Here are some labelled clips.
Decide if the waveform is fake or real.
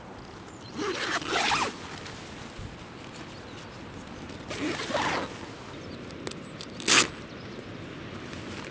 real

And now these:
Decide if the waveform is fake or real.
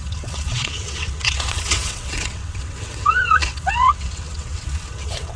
fake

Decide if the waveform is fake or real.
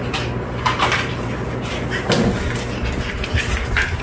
real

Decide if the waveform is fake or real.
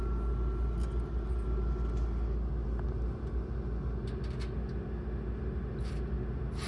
real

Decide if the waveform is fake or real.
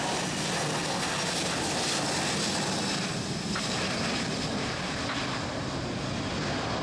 real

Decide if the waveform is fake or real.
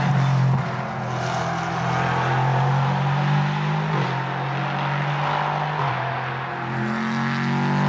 real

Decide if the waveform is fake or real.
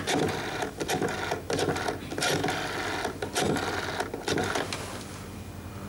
real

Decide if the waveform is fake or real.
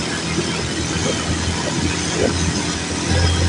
real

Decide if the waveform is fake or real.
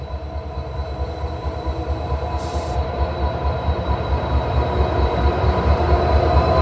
fake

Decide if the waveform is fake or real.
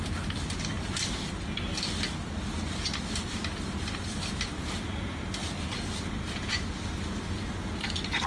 real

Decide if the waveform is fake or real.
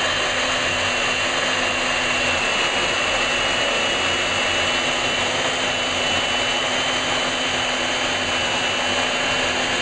real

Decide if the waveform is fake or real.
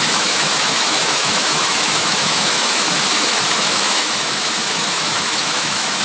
fake